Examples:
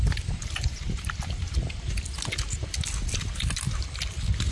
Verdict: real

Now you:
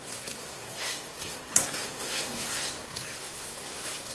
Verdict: fake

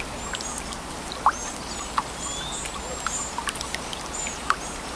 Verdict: real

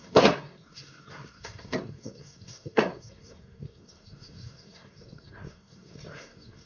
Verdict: fake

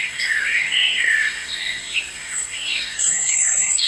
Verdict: fake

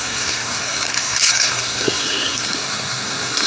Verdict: fake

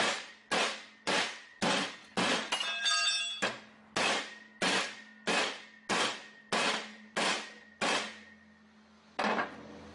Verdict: real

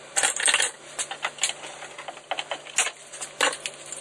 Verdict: real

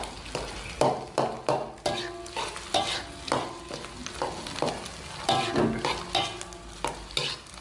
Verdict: real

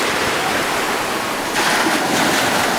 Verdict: real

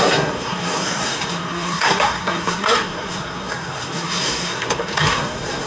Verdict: fake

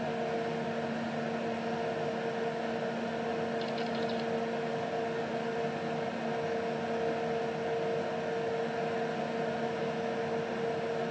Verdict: real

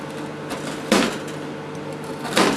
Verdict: real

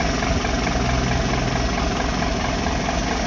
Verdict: real